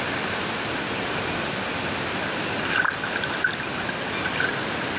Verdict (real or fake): real